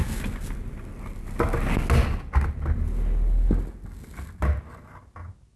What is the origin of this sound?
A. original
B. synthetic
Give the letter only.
A